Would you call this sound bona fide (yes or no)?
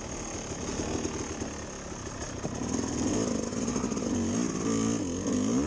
yes